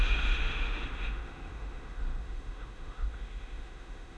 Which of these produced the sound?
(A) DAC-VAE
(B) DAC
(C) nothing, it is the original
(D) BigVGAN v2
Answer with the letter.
A